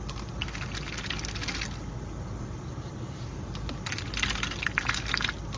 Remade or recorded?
recorded